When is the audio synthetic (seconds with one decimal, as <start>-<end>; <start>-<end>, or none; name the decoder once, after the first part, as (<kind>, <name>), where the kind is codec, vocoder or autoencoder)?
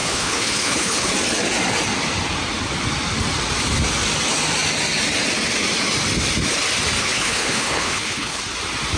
0.0-1.1 (codec, HILCodec); 7.0-8.4